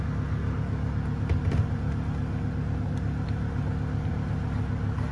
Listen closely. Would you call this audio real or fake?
real